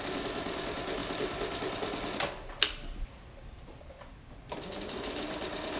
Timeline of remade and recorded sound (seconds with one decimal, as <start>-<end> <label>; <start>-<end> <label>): 0.0-5.8 recorded